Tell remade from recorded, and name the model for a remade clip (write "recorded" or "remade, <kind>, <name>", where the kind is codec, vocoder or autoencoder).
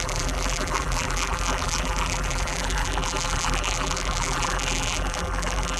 remade, vocoder, BigVGAN v2